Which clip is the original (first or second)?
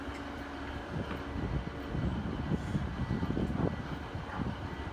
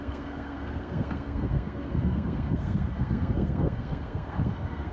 first